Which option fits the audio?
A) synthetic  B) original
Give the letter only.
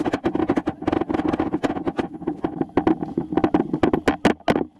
B